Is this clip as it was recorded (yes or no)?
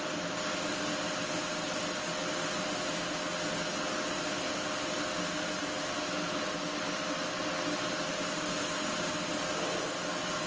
yes